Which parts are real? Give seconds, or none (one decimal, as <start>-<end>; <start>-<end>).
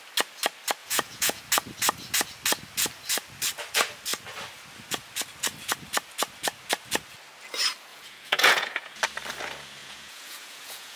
0.0-0.8; 1.4-7.9; 9.0-9.8